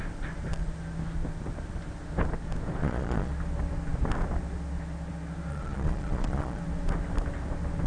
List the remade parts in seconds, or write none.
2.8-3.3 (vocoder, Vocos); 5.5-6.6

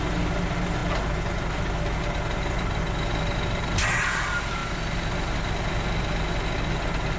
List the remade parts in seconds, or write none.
none

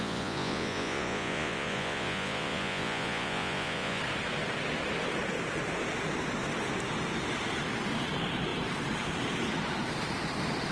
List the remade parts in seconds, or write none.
0.0-4.0 (vocoder, Vocos)

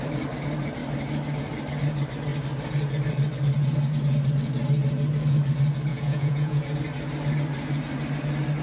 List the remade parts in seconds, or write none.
5.9-6.6 (vocoder, Vocos)

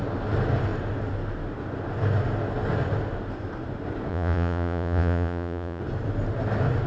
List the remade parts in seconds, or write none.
4.1-5.8 (vocoder, Vocos)

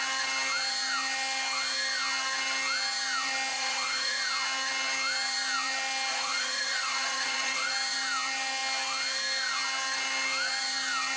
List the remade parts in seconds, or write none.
3.5-4.2 (vocoder, Vocos); 6.1-7.7

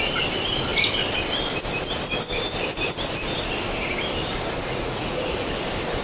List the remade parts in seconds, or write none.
4.8-5.5 (vocoder, Vocos)

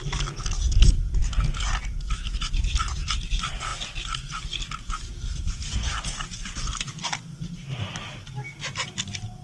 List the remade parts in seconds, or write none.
none